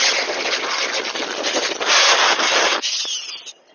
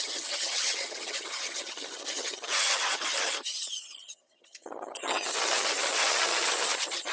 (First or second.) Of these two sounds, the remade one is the second